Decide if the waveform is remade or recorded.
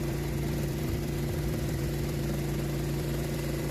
remade